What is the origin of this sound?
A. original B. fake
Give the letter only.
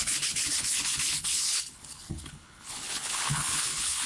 B